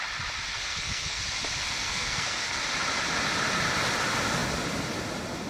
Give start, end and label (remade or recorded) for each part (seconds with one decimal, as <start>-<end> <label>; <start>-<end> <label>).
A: 0.0-0.5 recorded; 0.5-1.2 remade; 1.2-1.6 recorded; 1.6-2.6 remade; 2.6-5.5 recorded